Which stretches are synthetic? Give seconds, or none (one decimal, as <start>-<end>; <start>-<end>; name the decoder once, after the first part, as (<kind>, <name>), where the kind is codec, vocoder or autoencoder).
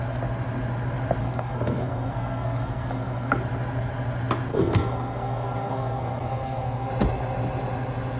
1.2-3.3 (codec, SNAC); 4.5-6.9